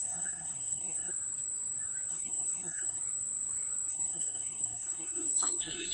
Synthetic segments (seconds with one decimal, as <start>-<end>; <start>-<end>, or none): 0.0-1.1; 2.1-3.0; 3.9-5.9